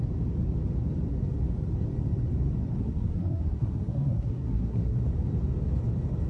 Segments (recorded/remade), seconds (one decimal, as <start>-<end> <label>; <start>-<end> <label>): 0.0-2.8 recorded; 2.8-5.1 remade; 5.1-6.3 recorded